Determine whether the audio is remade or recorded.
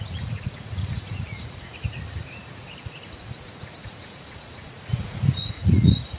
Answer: remade